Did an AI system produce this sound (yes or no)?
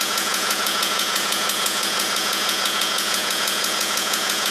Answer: yes